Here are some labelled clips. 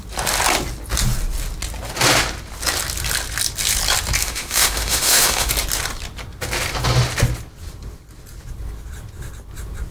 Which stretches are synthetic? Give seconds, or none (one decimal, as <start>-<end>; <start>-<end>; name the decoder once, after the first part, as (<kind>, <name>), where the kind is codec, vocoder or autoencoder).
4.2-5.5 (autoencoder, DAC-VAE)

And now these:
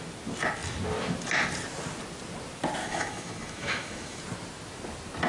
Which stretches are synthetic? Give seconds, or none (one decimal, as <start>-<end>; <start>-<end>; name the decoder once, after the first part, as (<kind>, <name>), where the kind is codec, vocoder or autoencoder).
2.8-4.2 (autoencoder, DAC-VAE)

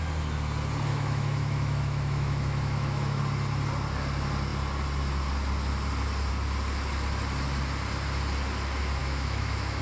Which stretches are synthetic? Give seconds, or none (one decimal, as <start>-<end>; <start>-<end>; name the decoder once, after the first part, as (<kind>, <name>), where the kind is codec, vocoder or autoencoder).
0.9-3.2 (autoencoder, DAC-VAE); 9.0-9.8